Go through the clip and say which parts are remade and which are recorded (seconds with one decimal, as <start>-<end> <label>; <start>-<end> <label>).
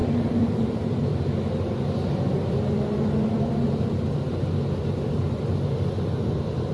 0.0-6.7 recorded